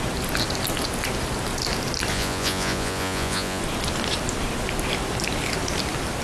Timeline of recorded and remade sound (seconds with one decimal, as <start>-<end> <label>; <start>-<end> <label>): 0.0-2.1 recorded; 2.1-3.6 remade; 3.6-6.2 recorded

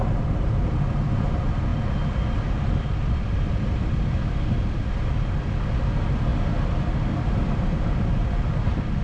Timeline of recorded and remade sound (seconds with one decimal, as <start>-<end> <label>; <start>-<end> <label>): 0.0-9.0 recorded

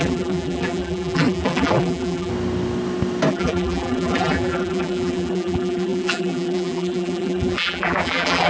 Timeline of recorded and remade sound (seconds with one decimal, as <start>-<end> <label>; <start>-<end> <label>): 0.0-2.3 remade; 2.3-3.3 recorded; 3.3-8.5 remade

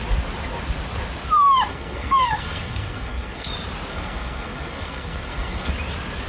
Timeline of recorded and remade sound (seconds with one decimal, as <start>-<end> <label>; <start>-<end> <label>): 0.0-1.7 recorded; 1.7-3.5 remade; 3.5-3.9 recorded; 3.9-5.7 remade; 5.7-6.3 recorded

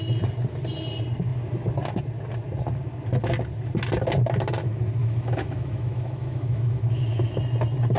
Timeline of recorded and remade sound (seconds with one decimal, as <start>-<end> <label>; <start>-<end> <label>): 0.0-5.0 recorded; 5.0-7.4 remade; 7.4-8.0 recorded

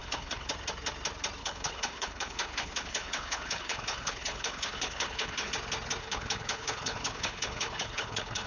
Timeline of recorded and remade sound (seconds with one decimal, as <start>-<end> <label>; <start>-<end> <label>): 0.0-0.5 remade; 0.5-1.4 recorded; 1.4-5.5 remade; 5.5-6.0 recorded; 6.0-8.5 remade

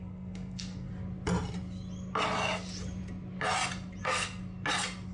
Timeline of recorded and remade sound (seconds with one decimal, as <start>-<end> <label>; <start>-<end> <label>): 0.0-0.9 remade; 0.9-4.0 recorded; 4.0-4.4 remade; 4.4-5.1 recorded